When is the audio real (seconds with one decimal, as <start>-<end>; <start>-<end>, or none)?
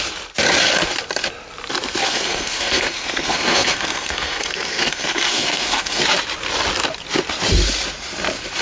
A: 0.0-2.0; 6.0-8.6